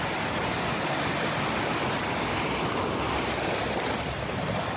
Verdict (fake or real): real